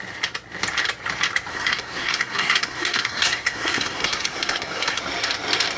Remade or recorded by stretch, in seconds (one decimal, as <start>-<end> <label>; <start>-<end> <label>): 0.0-1.5 recorded; 1.5-5.0 remade; 5.0-5.8 recorded